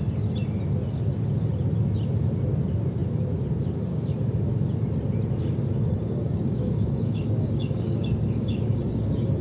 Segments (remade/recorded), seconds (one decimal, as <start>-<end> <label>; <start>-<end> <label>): 0.0-5.7 recorded; 5.7-9.4 remade